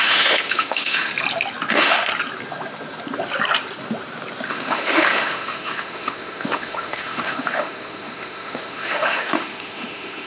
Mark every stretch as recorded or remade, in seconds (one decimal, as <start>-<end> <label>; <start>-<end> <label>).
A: 0.0-1.1 remade; 1.1-1.7 recorded; 1.7-2.1 remade; 2.1-4.5 recorded; 4.5-10.3 remade